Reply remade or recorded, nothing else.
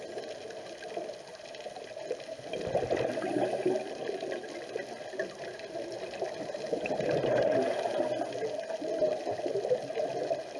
recorded